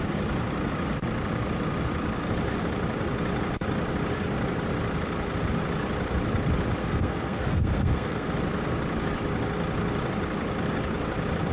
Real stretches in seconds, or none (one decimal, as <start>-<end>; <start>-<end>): 0.0-6.8; 8.3-11.5